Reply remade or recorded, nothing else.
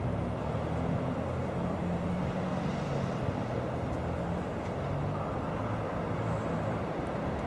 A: recorded